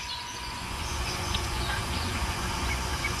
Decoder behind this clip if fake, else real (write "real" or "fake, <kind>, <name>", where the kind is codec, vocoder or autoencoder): fake, vocoder, Vocos